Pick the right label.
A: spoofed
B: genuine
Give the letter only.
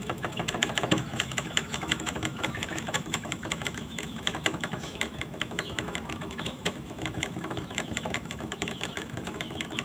A